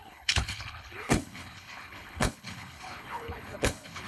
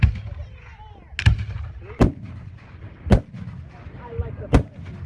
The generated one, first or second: first